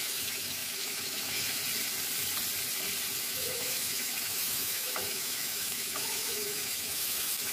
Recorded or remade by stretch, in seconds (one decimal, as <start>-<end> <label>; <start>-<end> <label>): 0.0-1.6 remade; 1.6-3.2 recorded; 3.2-7.5 remade